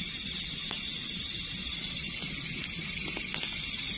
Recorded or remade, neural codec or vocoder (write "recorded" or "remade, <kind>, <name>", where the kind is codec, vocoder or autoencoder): recorded